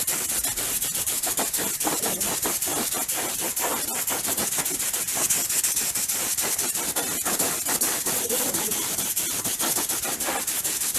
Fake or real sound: real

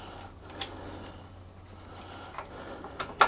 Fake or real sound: real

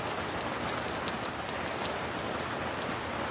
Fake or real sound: real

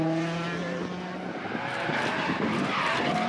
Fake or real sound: real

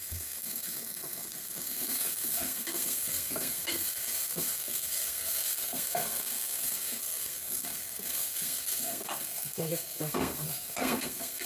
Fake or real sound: fake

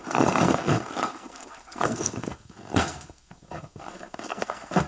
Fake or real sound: fake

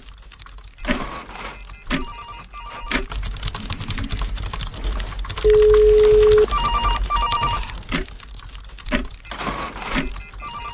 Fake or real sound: real